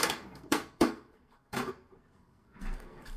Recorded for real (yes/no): no